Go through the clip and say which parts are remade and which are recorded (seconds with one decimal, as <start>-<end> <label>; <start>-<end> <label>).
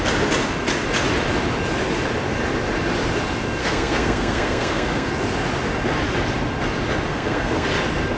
0.0-3.6 recorded; 3.6-5.1 remade; 5.1-7.1 recorded; 7.1-7.7 remade; 7.7-8.2 recorded